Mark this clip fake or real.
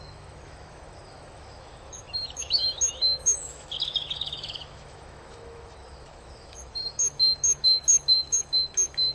fake